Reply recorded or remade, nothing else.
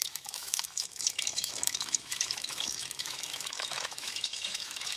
remade